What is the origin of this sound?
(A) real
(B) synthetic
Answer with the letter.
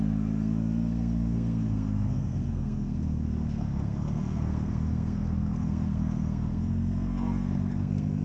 B